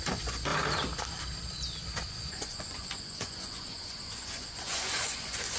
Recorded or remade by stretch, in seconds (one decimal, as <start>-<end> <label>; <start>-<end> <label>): 0.0-0.5 remade; 0.5-2.1 recorded; 2.1-5.6 remade